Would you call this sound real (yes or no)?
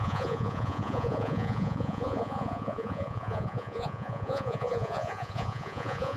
no